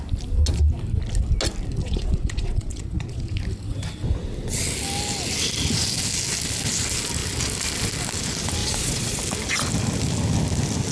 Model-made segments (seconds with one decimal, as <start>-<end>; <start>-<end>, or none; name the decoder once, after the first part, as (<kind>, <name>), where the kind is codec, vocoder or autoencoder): 1.8-3.4 (vocoder, Vocos); 8.6-9.2